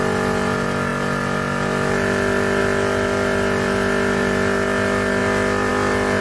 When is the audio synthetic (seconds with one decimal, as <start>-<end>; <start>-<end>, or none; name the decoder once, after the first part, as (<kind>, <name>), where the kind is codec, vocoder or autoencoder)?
none